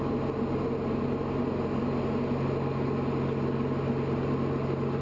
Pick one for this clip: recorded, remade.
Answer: recorded